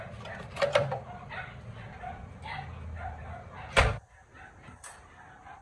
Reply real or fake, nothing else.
real